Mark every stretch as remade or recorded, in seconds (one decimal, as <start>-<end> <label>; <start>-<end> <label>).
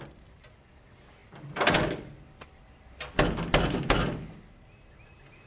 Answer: 0.0-5.5 recorded